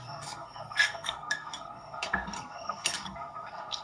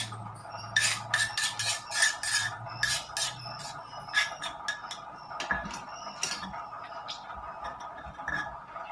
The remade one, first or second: first